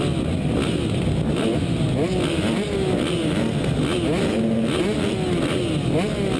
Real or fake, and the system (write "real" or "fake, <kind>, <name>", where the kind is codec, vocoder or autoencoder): real